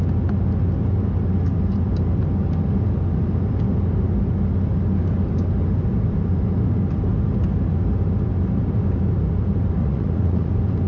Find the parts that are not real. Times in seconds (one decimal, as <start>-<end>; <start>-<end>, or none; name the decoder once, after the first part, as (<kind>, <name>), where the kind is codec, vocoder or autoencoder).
9.8-10.5 (vocoder, Vocos)